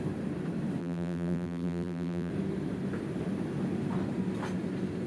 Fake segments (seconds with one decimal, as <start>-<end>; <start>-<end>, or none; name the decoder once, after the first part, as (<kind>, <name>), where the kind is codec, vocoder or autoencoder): 0.8-2.3 (vocoder, BigVGAN v2)